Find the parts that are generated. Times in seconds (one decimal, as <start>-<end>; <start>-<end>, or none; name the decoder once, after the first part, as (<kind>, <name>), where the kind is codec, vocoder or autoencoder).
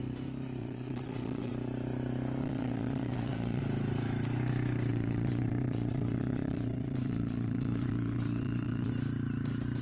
0.6-1.5 (vocoder, WaveNeXt); 2.4-3.6; 4.9-8.9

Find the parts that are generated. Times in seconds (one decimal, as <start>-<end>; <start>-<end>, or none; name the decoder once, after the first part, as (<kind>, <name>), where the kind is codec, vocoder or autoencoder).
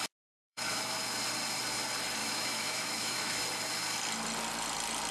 0.4-1.0 (autoencoder, DAC-VAE); 2.2-3.4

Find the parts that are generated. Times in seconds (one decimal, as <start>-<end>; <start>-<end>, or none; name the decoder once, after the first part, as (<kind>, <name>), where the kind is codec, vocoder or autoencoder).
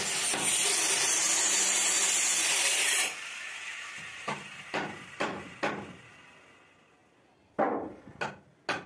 1.2-6.1 (vocoder, BigVGAN v2)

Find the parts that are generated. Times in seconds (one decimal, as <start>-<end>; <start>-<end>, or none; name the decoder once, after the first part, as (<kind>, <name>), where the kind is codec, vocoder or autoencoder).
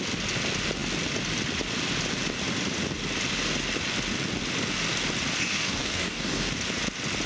5.4-6.5 (codec, DAC)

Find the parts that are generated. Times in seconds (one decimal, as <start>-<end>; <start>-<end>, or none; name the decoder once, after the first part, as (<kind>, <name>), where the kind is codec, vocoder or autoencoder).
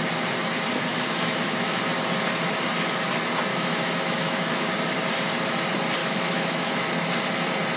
0.9-1.8 (autoencoder, DAC-VAE); 3.5-4.6; 6.0-6.7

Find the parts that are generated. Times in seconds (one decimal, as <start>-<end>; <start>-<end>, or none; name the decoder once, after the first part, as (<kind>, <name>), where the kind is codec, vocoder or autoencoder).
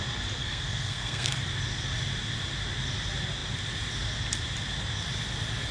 0.4-1.4 (codec, SNAC)